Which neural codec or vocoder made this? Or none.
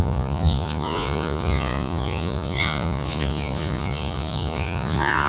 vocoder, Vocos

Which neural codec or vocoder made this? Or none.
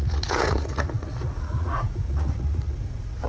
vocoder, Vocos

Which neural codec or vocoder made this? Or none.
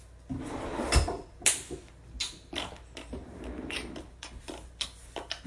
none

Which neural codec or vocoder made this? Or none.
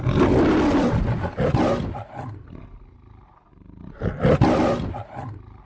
none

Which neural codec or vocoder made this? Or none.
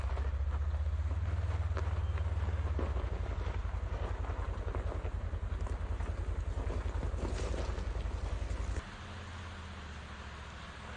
none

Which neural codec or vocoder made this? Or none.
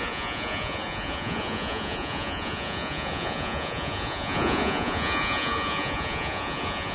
vocoder, Vocos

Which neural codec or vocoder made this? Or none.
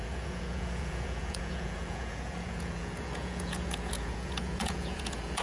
vocoder, Vocos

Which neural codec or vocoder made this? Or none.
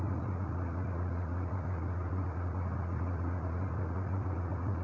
vocoder, Vocos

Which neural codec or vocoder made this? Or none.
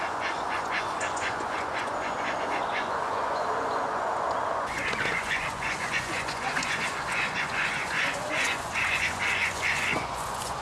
vocoder, Vocos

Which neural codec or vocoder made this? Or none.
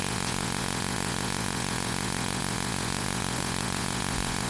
vocoder, Vocos